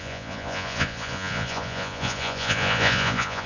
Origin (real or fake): fake